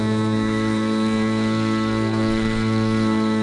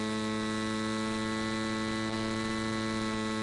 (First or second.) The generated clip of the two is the first